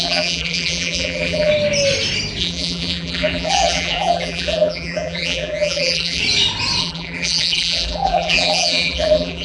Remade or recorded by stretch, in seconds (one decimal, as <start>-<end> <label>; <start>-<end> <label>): 0.0-1.5 remade; 1.5-2.4 recorded; 2.4-6.2 remade; 6.2-6.8 recorded; 6.8-9.4 remade